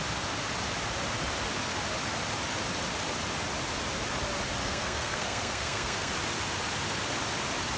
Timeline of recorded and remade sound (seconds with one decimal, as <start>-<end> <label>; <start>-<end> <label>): 0.0-4.6 recorded; 4.6-6.1 remade; 6.1-7.8 recorded